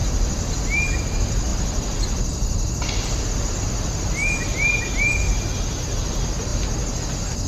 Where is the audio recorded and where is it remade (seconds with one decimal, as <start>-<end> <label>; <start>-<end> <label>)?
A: 0.0-0.5 remade; 0.5-1.5 recorded; 1.5-3.5 remade; 3.5-7.5 recorded